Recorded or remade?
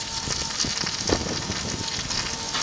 recorded